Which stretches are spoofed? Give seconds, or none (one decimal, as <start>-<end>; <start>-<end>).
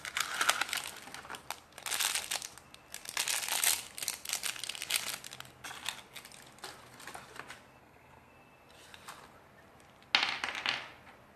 7.8-8.3